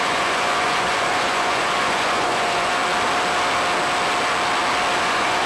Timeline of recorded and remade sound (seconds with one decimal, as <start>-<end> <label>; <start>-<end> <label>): 0.0-2.8 remade; 2.8-5.0 recorded; 5.0-5.5 remade